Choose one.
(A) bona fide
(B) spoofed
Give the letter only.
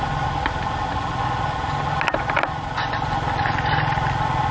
A